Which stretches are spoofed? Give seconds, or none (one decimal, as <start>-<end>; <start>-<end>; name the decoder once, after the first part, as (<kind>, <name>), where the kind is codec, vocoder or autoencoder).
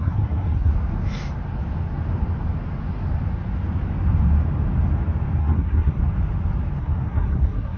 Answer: 0.0-0.7 (codec, SNAC); 5.4-6.0; 6.8-7.8